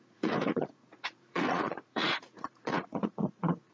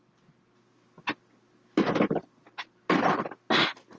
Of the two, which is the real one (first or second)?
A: second